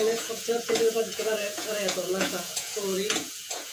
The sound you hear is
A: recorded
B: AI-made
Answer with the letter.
B